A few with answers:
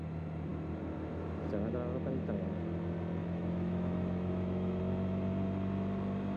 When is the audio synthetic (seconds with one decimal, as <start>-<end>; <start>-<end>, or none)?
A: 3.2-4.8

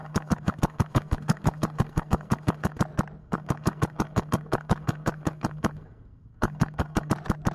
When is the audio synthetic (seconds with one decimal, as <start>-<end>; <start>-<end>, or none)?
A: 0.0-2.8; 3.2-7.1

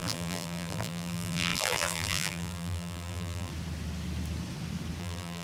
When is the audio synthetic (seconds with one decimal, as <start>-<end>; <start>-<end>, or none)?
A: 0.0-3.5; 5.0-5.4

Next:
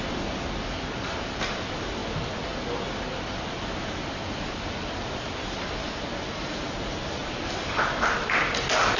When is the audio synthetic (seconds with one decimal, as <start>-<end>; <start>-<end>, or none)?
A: none

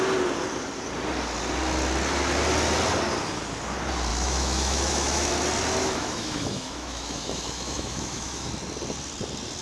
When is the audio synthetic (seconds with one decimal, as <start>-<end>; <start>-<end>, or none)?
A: 4.1-5.3; 5.8-8.5

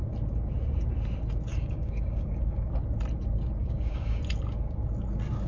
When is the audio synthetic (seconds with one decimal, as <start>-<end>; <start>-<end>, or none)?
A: 1.5-2.7; 3.6-4.2